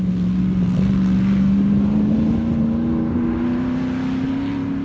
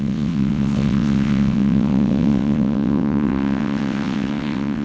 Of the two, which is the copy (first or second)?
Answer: second